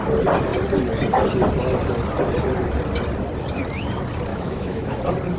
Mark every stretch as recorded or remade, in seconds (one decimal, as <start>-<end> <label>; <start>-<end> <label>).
0.0-4.3 recorded; 4.3-5.0 remade; 5.0-5.4 recorded